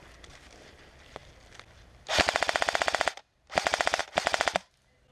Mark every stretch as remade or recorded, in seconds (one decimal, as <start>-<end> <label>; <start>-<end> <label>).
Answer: 0.0-5.1 recorded